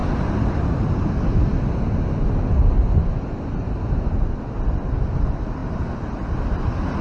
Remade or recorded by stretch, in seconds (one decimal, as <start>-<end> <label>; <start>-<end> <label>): 0.0-7.0 recorded